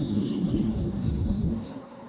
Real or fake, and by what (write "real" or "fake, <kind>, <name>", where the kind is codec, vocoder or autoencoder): fake, codec, SNAC